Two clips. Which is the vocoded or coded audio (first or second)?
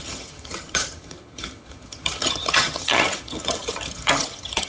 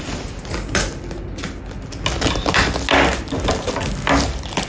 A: first